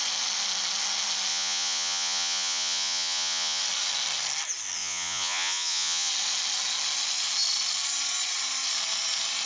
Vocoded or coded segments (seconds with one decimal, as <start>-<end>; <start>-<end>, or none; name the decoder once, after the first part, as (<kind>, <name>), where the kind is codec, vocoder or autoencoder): 1.3-3.6 (vocoder, Vocos); 4.8-6.1

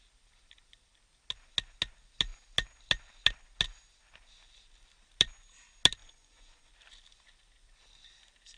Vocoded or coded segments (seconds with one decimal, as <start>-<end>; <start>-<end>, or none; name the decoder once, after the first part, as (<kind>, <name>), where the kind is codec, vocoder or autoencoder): 6.0-6.7 (vocoder, Vocos)

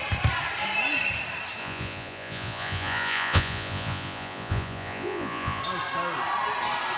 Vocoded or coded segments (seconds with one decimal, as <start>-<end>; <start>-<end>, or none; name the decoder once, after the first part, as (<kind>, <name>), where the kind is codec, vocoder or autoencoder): 1.6-5.6 (vocoder, Vocos)

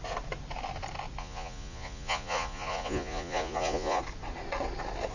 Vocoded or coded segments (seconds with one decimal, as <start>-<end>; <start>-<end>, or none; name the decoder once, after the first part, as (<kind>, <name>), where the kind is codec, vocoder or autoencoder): 1.2-4.0 (vocoder, Vocos)

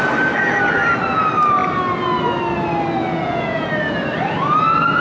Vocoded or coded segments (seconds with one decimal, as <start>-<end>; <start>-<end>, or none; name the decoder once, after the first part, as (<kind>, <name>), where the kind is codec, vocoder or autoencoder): 3.0-3.7 (vocoder, Vocos)